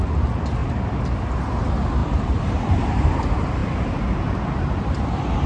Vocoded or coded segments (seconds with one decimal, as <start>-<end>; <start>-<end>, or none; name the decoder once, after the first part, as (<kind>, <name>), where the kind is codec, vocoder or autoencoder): 0.6-1.4 (vocoder, BigVGAN v2); 2.0-3.2